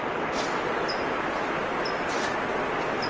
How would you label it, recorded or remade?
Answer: recorded